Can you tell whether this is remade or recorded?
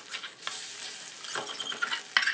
recorded